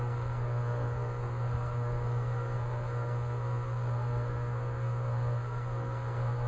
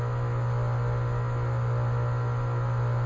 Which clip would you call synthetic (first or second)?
first